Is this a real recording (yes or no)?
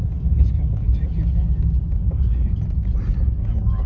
yes